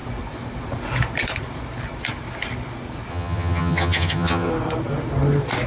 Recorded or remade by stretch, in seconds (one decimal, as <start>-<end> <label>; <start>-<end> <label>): 0.0-3.1 recorded; 3.1-4.5 remade; 4.5-5.7 recorded